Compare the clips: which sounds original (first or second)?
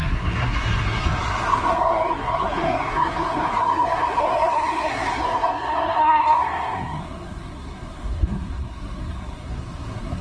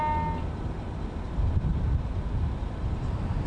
second